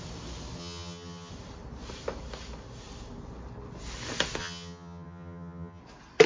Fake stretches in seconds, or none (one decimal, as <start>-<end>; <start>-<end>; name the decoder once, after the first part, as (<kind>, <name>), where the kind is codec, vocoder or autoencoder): 0.6-1.3 (vocoder, HiFi-GAN); 4.4-5.8